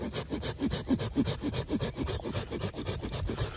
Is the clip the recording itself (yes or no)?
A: yes